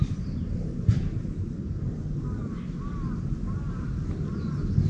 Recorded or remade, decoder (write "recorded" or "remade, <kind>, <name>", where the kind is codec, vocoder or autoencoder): recorded